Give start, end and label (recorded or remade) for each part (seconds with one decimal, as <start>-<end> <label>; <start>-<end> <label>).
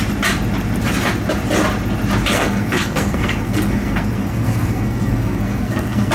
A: 0.0-2.3 recorded; 2.3-6.1 remade